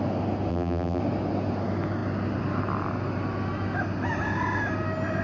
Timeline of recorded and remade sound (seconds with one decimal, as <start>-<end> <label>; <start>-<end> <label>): 0.0-0.5 recorded; 0.5-1.0 remade; 1.0-5.2 recorded

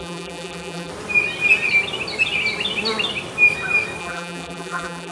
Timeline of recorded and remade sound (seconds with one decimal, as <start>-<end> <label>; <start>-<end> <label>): 0.0-0.9 remade; 0.9-4.0 recorded; 4.0-5.1 remade